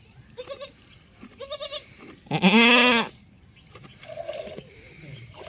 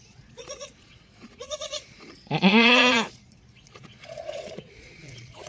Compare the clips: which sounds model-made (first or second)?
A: second